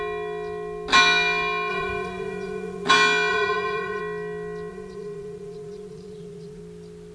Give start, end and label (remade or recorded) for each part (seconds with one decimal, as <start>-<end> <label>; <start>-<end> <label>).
0.0-1.7 recorded; 1.7-2.9 remade; 2.9-3.3 recorded; 3.3-4.0 remade; 4.0-4.7 recorded; 4.7-6.6 remade; 6.6-7.1 recorded